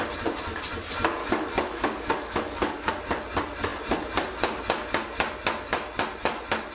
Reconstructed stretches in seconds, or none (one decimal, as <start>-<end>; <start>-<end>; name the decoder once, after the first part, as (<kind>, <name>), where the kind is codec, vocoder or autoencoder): 1.2-2.9 (codec, DAC)